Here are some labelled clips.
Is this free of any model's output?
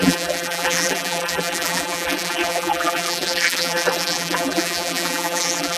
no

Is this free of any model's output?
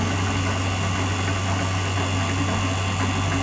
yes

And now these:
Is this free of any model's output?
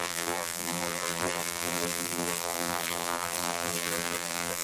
no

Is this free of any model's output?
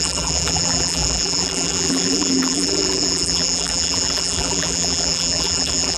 no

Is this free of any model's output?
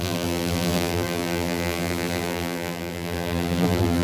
no